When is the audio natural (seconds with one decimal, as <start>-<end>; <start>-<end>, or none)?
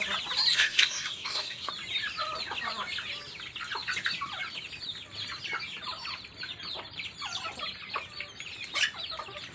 0.0-0.5; 1.7-9.5